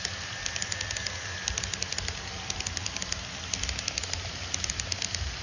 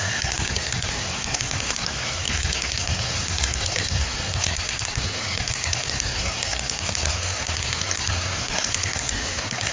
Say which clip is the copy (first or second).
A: second